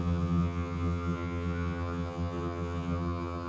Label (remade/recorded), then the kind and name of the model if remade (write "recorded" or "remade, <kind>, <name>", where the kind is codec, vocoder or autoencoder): remade, vocoder, HiFi-GAN